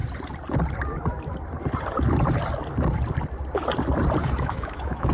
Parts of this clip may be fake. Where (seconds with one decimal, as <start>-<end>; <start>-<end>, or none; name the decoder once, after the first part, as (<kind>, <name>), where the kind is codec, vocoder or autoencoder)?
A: 4.2-5.1 (autoencoder, DAC-VAE)